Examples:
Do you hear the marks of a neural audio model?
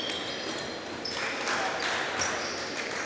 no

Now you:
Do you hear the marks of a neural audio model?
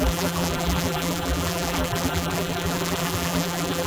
yes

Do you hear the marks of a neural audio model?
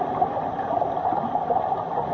no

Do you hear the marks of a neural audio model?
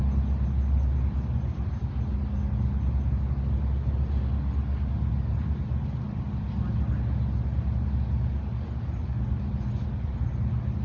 no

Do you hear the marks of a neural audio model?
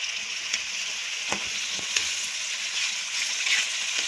yes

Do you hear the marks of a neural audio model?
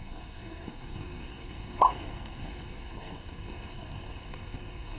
yes